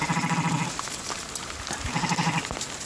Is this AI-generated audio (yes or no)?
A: no